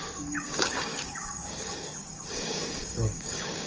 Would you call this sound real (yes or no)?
no